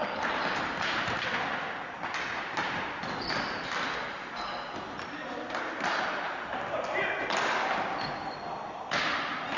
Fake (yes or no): no